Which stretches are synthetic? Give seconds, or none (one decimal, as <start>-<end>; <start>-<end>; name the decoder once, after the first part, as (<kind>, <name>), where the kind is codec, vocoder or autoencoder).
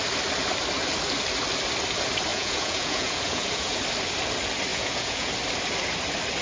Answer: 2.3-3.8 (vocoder, Vocos); 4.7-5.3